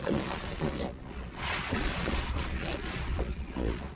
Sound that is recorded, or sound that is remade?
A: remade